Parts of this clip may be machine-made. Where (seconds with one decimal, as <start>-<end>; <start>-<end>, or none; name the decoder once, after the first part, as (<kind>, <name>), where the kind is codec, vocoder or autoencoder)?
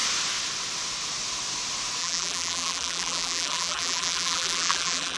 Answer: 2.0-5.2 (vocoder, BigVGAN v2)